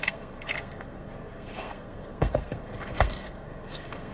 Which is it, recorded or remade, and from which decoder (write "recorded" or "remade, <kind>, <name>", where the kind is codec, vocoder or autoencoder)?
remade, codec, SNAC